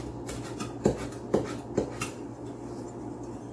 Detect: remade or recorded recorded